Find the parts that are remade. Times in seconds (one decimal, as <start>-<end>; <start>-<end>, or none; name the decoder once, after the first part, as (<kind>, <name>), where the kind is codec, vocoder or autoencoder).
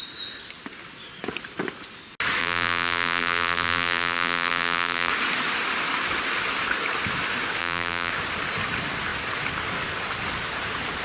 2.4-5.1 (vocoder, BigVGAN v2); 7.6-8.1